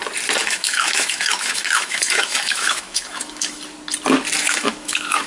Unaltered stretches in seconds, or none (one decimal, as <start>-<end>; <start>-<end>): 0.0-0.4; 3.6-4.4